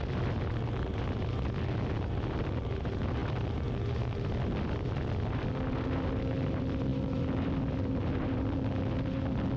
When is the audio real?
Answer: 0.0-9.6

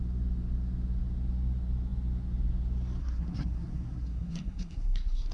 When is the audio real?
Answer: 0.0-3.0

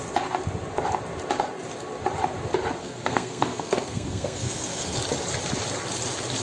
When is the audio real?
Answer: 0.0-2.8; 5.0-6.4

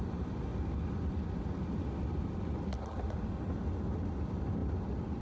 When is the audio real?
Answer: 0.0-5.2